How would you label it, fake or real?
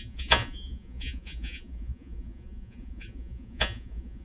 fake